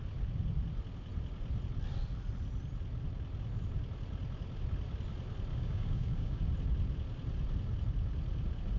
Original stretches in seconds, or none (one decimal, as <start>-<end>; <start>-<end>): 0.0-5.5; 6.4-8.8